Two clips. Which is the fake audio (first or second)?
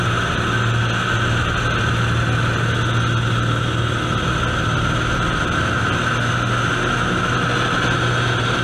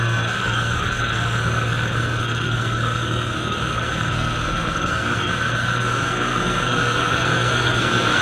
second